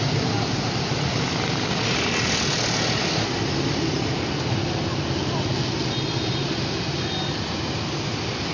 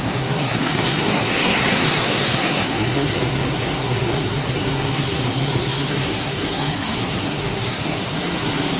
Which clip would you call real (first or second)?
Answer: first